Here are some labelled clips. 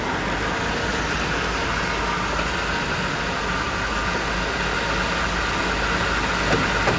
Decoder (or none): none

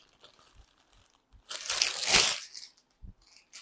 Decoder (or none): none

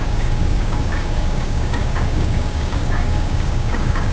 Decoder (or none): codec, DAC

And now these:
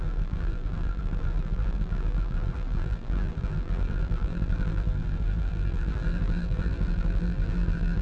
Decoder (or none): vocoder, BigVGAN v2